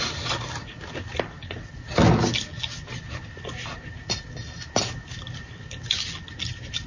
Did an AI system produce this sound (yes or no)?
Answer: no